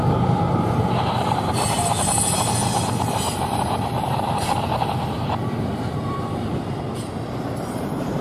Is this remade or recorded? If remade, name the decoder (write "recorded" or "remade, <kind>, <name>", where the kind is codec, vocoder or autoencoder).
remade, vocoder, BigVGAN v2